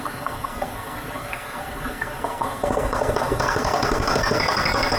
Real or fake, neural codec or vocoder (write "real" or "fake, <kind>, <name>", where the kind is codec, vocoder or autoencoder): fake, codec, SNAC